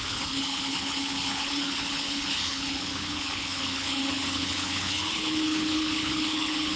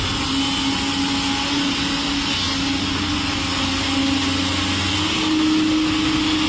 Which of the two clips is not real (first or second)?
first